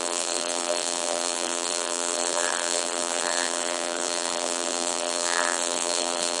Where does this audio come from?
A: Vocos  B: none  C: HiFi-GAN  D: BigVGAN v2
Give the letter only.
D